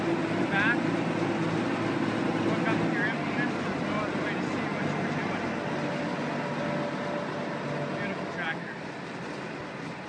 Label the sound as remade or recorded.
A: recorded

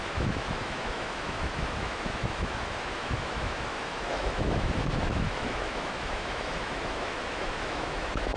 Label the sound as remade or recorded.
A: remade